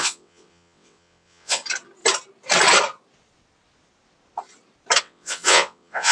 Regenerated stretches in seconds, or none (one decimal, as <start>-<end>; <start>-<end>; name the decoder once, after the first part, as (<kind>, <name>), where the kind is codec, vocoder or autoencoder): 0.0-1.6 (vocoder, WaveNeXt); 5.0-6.1